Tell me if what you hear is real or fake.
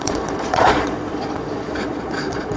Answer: fake